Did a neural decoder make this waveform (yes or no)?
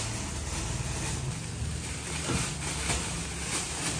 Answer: no